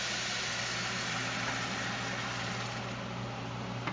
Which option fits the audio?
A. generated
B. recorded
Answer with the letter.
B